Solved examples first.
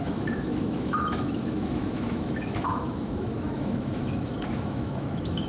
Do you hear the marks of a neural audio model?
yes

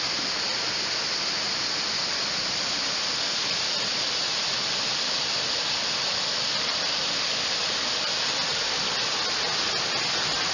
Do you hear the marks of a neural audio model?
no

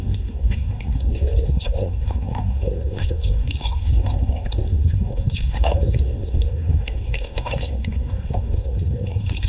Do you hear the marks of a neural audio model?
yes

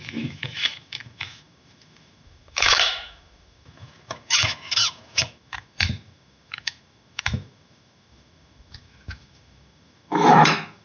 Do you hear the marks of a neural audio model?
yes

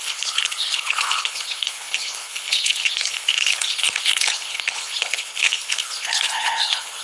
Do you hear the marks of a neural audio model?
yes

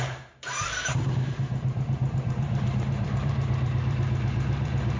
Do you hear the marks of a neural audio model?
yes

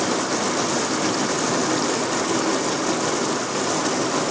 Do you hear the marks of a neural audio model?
no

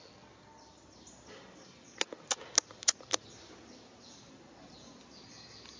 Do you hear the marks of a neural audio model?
no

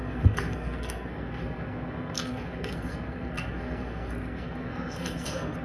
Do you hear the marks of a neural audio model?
yes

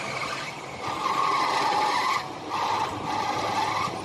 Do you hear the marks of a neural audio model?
yes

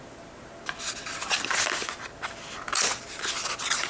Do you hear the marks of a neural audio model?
no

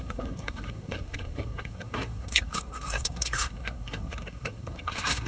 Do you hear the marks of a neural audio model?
yes